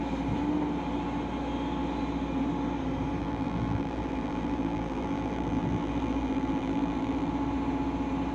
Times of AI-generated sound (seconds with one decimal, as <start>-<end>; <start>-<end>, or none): 3.2-7.3